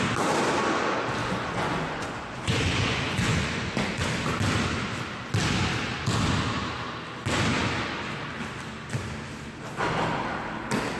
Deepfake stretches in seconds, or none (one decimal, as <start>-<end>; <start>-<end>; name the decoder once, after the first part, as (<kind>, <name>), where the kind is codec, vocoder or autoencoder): 1.2-3.9 (vocoder, Vocos)